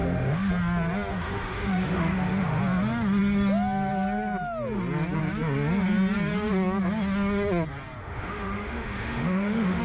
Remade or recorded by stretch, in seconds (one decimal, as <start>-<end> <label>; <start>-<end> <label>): 0.0-0.5 remade; 0.5-1.1 recorded; 1.1-2.6 remade; 2.6-8.0 recorded; 8.0-9.8 remade